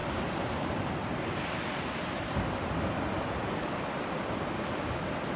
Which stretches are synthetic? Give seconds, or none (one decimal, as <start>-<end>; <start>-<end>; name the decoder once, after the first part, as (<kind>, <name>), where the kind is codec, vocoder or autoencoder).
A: none